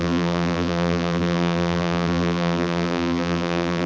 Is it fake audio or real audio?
fake